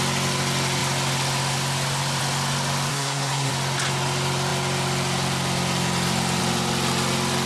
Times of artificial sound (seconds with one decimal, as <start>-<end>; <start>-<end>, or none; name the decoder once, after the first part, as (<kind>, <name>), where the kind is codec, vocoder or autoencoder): 2.9-3.5 (codec, SNAC)